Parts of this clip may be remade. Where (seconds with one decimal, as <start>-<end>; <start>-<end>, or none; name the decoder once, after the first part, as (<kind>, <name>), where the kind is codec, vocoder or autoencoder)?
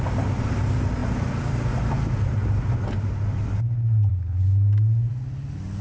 none